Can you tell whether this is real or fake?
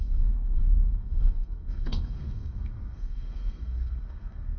fake